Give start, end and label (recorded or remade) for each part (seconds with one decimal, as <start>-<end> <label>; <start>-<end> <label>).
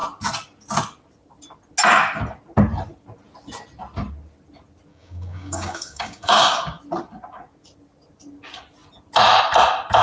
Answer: 0.0-4.9 recorded; 4.9-6.8 remade; 6.8-10.0 recorded